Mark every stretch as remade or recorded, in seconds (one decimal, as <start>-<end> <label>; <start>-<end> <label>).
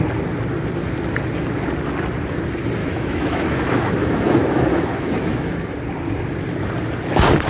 0.0-2.8 recorded; 2.8-5.7 remade; 5.7-7.5 recorded